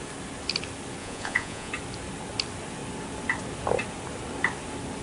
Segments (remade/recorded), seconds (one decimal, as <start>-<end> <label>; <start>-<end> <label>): 0.0-1.0 recorded; 1.0-1.7 remade; 1.7-5.0 recorded